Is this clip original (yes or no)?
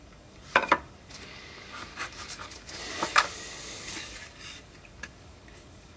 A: no